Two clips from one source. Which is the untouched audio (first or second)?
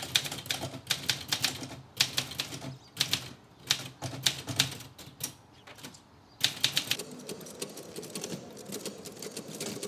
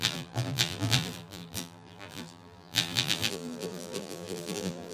first